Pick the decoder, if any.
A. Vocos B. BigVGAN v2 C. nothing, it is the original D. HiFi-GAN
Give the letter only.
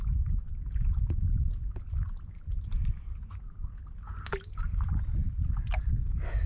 C